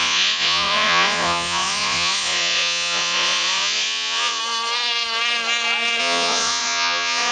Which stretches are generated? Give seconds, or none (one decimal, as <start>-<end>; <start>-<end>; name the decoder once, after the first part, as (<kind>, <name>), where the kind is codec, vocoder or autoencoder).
0.0-4.4 (vocoder, Vocos); 6.0-7.3